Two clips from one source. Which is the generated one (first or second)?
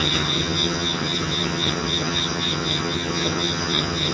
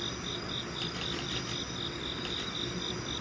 first